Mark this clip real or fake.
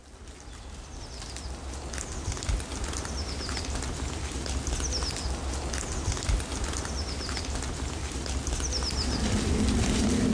real